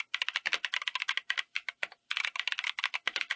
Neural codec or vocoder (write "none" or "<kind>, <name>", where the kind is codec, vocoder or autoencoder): none